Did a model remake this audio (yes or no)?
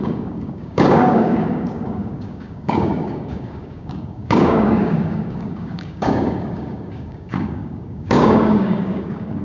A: yes